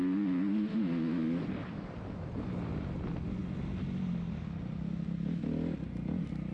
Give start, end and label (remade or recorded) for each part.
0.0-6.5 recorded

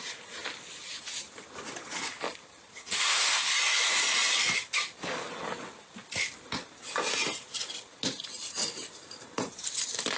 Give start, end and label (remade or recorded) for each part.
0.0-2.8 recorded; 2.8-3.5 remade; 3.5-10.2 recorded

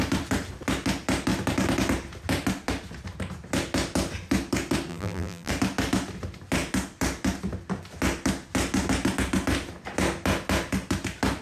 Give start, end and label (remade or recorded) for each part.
0.0-4.9 recorded; 4.9-5.5 remade; 5.5-11.4 recorded